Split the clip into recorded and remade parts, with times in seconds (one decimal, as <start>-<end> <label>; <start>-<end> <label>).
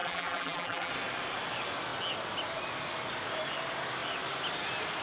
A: 0.0-0.9 remade; 0.9-5.0 recorded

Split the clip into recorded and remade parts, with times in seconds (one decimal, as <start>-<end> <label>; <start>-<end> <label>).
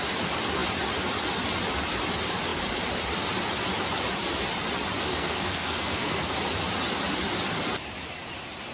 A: 0.0-5.1 recorded; 5.1-6.3 remade; 6.3-8.7 recorded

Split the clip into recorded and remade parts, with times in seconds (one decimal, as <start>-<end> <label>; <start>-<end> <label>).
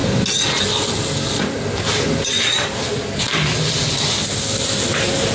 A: 0.0-5.3 recorded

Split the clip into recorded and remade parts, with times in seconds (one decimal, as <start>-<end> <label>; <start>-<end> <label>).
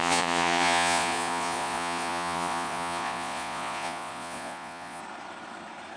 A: 0.0-5.0 remade; 5.0-6.0 recorded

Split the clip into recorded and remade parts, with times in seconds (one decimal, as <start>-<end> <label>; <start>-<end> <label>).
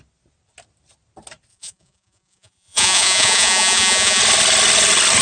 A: 0.0-1.5 recorded; 1.5-4.2 remade; 4.2-5.2 recorded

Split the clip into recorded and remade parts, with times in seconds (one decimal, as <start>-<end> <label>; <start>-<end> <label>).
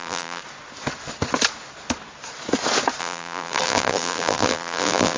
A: 0.0-0.4 remade; 0.4-3.0 recorded; 3.0-5.2 remade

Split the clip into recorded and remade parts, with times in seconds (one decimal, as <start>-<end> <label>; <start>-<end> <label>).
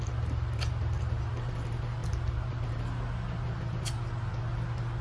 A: 0.0-5.0 recorded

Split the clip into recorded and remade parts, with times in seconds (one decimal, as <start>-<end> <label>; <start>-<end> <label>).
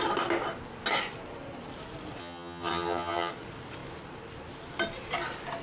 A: 0.0-2.2 recorded; 2.2-3.3 remade; 3.3-5.6 recorded